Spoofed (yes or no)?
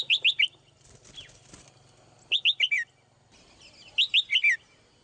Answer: no